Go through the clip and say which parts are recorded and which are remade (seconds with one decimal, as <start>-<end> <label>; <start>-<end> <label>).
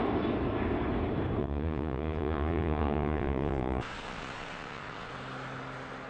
0.0-1.4 recorded; 1.4-5.1 remade; 5.1-6.1 recorded